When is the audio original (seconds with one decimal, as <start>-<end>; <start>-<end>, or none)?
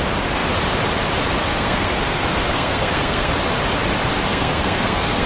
0.0-1.4; 3.3-4.3